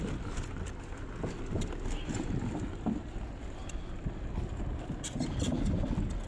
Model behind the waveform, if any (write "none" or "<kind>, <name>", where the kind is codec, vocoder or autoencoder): none